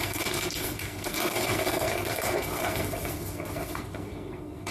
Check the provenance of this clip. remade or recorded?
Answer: remade